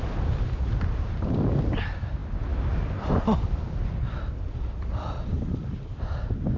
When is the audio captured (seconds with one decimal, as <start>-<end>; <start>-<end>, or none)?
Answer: 0.0-6.6